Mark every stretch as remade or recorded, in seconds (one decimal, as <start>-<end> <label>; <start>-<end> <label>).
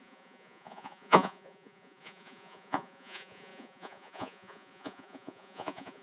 0.0-6.0 remade